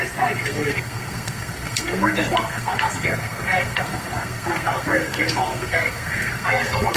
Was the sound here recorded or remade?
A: remade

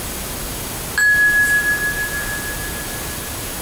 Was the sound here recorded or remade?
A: recorded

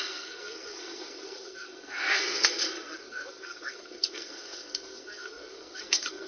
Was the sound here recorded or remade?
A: remade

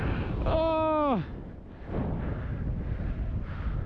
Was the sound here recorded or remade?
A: recorded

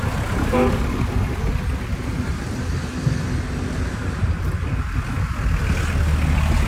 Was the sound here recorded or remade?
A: recorded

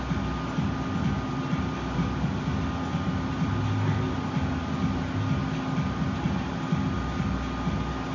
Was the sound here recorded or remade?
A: recorded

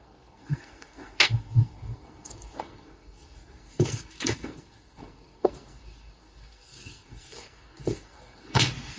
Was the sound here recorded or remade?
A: remade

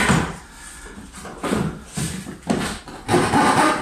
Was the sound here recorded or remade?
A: recorded